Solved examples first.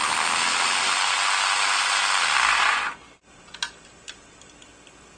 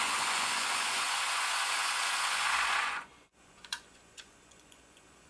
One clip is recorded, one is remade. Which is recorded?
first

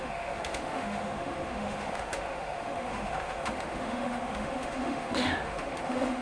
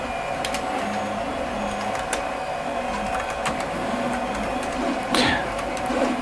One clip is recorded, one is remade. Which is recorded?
second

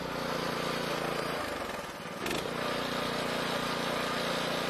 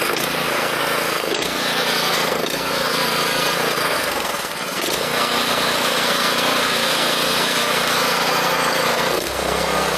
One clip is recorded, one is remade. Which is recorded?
first